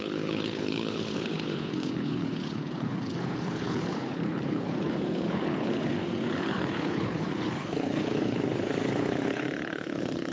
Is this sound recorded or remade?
remade